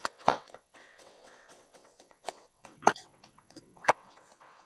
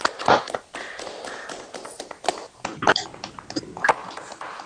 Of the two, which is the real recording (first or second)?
second